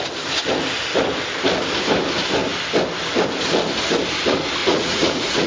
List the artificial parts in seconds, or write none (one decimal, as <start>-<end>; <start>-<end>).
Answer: 4.6-5.5